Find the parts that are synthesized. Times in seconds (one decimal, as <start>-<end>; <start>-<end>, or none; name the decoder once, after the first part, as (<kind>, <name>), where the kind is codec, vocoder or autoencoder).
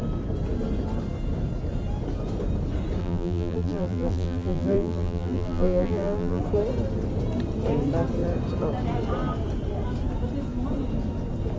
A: 3.0-6.4 (vocoder, BigVGAN v2)